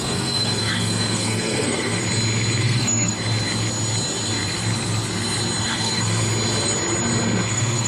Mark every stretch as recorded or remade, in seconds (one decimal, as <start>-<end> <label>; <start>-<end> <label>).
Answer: 0.0-2.0 remade; 2.0-2.6 recorded; 2.6-3.1 remade; 3.1-5.6 recorded; 5.6-6.2 remade; 6.2-7.5 recorded; 7.5-7.9 remade